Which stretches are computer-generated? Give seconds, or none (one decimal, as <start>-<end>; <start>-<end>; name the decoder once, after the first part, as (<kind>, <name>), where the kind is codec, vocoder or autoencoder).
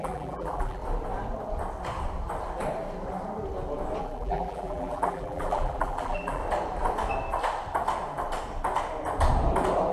0.0-0.8 (vocoder, BigVGAN v2); 4.0-6.4